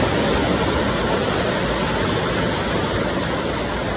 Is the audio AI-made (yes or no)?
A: no